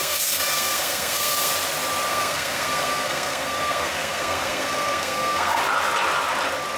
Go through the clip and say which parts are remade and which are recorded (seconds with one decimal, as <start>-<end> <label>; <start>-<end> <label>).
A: 0.0-1.5 remade; 1.5-2.1 recorded; 2.1-5.6 remade; 5.6-6.8 recorded